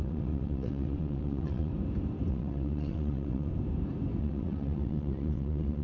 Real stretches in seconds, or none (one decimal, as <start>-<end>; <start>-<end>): 1.7-2.3; 3.5-4.2